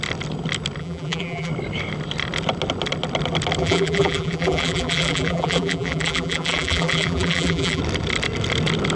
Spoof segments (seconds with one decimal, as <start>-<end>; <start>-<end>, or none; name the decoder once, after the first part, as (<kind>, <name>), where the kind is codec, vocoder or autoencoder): 0.8-1.5 (vocoder, BigVGAN v2); 3.6-7.8